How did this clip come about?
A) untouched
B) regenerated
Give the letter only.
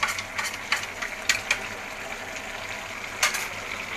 A